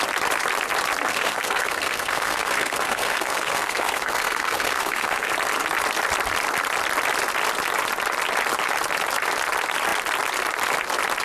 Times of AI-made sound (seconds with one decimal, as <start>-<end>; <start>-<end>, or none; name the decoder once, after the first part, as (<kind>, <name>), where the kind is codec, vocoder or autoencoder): 1.1-5.3 (codec, SNAC)